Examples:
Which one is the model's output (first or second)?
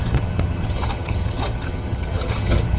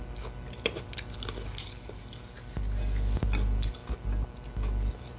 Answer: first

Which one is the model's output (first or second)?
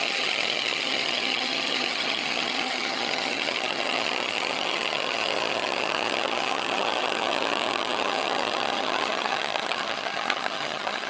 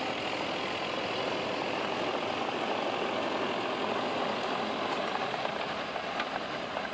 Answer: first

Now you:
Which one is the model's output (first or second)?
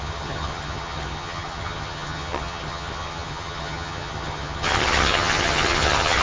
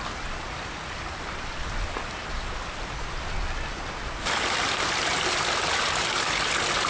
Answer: first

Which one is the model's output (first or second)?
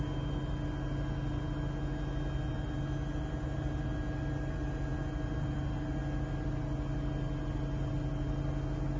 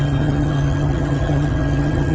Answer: second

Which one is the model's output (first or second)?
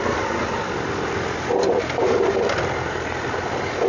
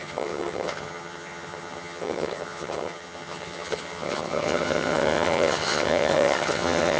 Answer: second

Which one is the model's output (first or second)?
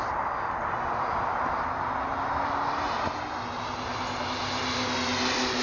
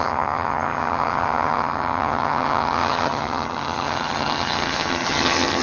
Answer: second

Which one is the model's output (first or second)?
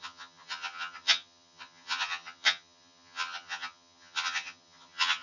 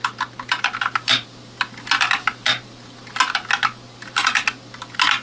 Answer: first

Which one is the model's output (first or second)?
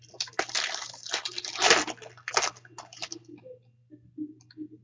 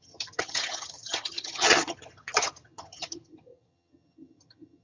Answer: second